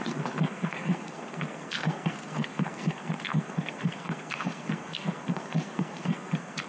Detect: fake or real fake